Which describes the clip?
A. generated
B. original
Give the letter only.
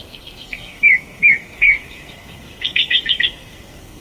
A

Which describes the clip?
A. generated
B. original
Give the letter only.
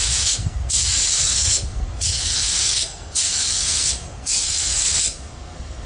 A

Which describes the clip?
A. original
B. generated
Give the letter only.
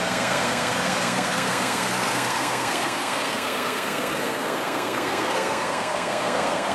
B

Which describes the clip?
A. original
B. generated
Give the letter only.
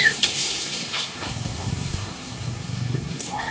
B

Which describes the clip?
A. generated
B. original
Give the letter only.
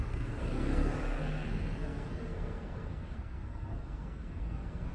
A